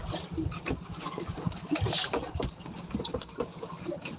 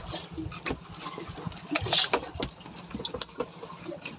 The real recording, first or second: second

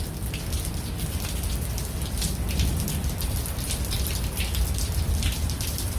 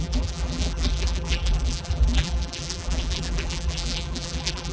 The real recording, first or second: first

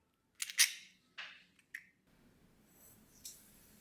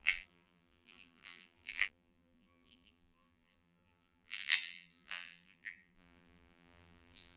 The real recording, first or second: first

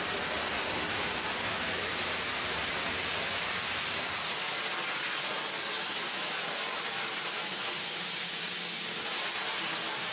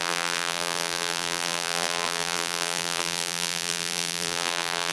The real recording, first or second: first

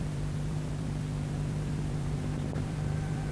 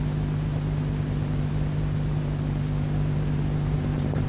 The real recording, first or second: second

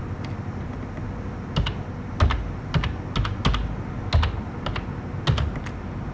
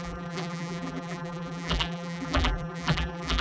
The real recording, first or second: first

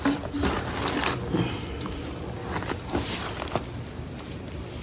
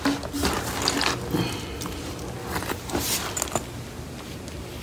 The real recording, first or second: second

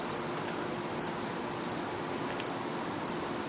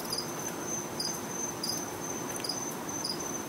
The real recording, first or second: first